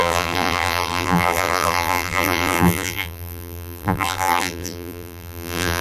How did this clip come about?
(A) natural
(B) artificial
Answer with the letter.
B